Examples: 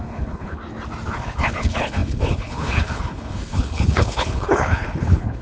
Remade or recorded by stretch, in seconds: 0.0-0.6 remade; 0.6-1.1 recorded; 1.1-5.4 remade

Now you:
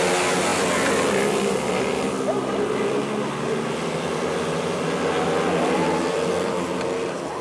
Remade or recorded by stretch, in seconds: 0.0-7.4 recorded

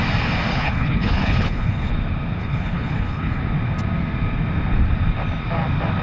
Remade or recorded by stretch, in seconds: 0.0-0.5 recorded; 0.5-1.9 remade; 1.9-2.4 recorded; 2.4-3.4 remade; 3.4-6.0 recorded